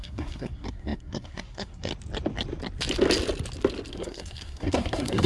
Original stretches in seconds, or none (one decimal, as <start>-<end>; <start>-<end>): 1.9-3.9